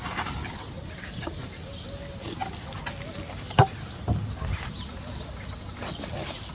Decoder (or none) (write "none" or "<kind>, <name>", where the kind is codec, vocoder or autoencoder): none